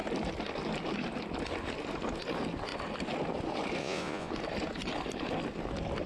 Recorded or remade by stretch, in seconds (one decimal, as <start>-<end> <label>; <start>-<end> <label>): 0.0-3.8 recorded; 3.8-4.3 remade; 4.3-6.1 recorded